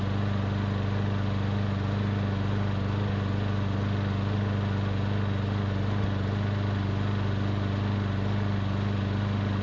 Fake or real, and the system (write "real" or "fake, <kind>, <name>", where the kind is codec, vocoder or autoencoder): real